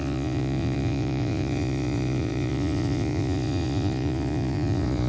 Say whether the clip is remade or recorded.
remade